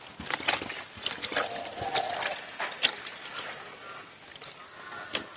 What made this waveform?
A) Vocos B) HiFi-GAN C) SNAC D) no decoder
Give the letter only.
D